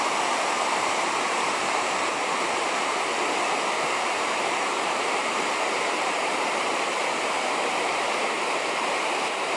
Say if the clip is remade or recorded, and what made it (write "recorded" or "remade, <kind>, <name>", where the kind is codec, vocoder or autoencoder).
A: remade, vocoder, BigVGAN v2